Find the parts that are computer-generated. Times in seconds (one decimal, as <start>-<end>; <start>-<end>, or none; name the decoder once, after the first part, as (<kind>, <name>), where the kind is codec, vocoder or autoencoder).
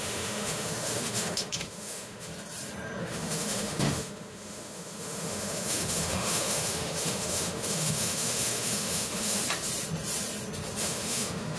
0.0-2.3 (autoencoder, DAC-VAE); 3.0-9.4; 10.8-11.6